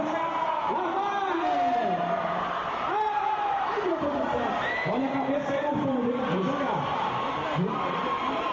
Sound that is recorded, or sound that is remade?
remade